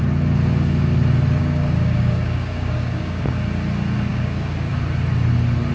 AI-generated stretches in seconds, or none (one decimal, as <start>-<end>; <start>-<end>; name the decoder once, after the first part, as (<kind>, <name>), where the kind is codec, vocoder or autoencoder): 1.4-3.3 (codec, DAC); 4.1-4.7